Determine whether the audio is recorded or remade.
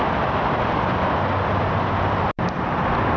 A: recorded